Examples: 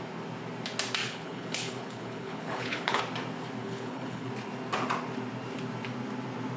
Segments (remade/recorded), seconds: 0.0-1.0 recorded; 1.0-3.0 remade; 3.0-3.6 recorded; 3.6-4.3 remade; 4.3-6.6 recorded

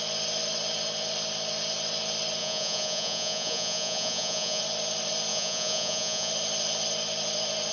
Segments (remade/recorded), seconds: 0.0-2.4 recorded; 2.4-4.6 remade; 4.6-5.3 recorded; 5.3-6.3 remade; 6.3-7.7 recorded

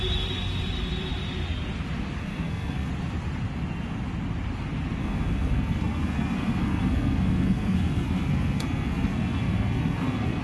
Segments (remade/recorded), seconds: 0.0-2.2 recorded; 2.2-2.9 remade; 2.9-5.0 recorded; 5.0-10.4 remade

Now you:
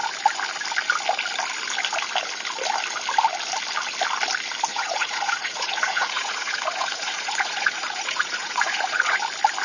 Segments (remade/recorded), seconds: 0.0-4.7 recorded; 4.7-9.2 remade; 9.2-9.6 recorded

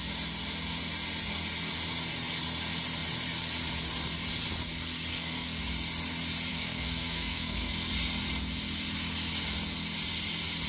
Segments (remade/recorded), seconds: 0.0-5.1 recorded; 5.1-5.6 remade; 5.6-6.5 recorded; 6.5-7.9 remade; 7.9-10.7 recorded